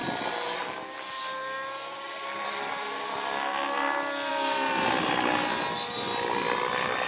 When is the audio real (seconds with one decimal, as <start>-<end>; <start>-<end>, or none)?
0.0-7.1